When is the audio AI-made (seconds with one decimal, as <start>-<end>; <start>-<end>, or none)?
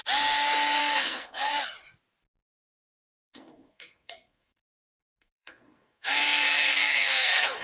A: 0.8-1.5; 2.4-7.6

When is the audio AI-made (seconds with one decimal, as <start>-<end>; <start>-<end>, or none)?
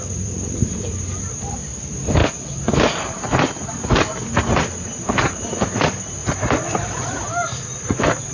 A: 0.0-6.2; 7.8-8.3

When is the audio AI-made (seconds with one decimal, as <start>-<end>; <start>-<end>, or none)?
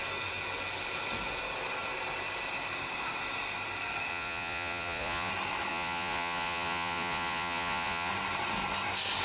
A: 4.1-5.3; 5.7-8.1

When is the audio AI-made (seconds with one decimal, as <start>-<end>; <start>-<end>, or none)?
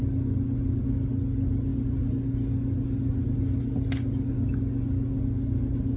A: none